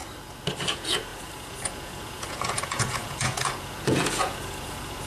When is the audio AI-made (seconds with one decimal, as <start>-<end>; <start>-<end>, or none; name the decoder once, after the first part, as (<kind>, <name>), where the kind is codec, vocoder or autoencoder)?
0.7-5.1 (vocoder, Vocos)